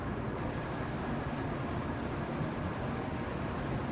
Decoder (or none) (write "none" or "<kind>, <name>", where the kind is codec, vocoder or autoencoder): none